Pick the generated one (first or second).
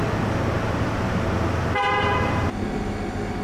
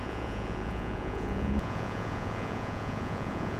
second